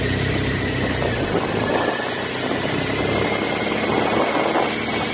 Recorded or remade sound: recorded